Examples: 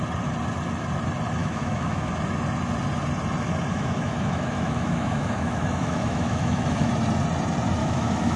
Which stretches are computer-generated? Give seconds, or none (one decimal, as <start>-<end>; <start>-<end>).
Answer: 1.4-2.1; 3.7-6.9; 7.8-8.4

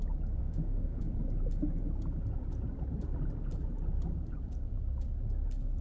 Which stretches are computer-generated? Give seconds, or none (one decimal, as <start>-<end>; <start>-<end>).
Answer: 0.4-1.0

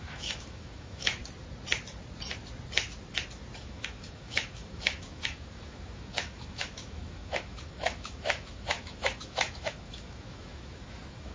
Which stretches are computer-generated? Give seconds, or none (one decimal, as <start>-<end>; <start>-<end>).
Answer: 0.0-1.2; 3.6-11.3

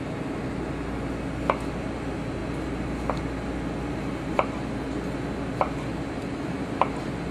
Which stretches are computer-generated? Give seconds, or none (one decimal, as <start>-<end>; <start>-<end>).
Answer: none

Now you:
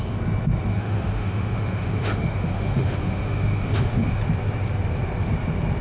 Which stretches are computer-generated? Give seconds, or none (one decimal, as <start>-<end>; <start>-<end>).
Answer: 0.7-4.2